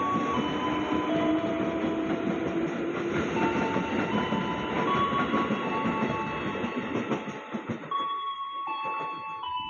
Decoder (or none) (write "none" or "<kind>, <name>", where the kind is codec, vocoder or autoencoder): none